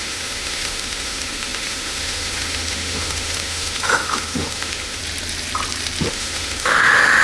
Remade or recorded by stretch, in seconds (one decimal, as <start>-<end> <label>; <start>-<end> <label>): 0.0-5.0 remade; 5.0-6.1 recorded; 6.1-7.2 remade